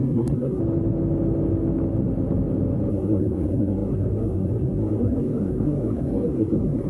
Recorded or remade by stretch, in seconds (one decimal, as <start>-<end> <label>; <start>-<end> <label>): 0.0-0.6 remade; 0.6-2.9 recorded; 2.9-6.9 remade